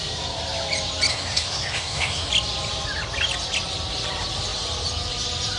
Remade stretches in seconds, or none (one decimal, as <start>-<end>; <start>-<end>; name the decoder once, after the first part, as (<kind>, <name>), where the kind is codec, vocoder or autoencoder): 1.1-2.3 (codec, SNAC)

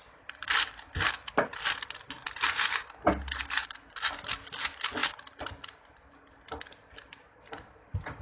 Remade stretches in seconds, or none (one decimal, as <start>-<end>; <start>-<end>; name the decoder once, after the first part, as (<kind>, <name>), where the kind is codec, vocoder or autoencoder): 0.0-2.2 (vocoder, BigVGAN v2); 3.4-8.2

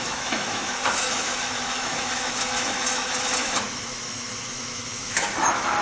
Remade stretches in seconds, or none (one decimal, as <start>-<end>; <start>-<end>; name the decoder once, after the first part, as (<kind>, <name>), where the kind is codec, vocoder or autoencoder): 0.0-5.8 (autoencoder, DAC-VAE)